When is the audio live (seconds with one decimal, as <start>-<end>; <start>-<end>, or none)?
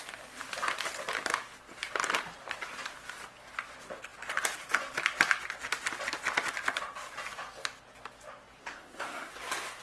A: 0.0-8.6; 9.3-9.8